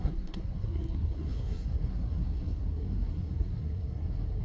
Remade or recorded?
remade